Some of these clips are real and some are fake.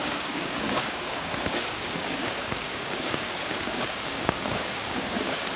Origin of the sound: fake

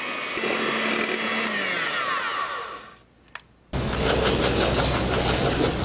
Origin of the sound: real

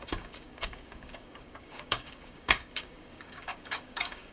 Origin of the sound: fake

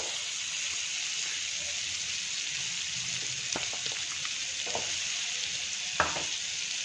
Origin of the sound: real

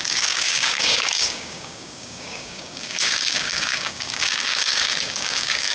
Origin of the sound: fake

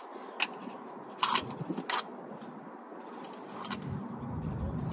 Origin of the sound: real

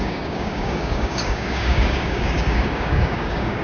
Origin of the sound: fake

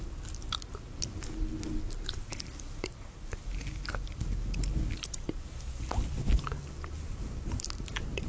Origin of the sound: real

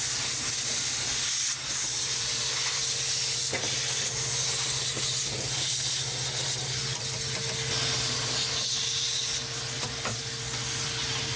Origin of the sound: real